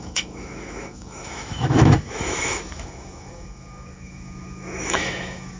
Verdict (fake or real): fake